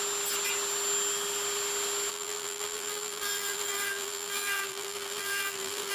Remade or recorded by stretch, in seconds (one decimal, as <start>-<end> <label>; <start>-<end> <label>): 0.0-2.1 recorded; 2.1-5.9 remade